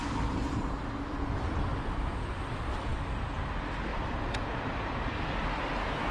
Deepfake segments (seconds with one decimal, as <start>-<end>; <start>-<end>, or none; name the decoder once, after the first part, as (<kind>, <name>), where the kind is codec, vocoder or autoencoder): 0.0-0.8 (vocoder, BigVGAN v2); 3.9-4.9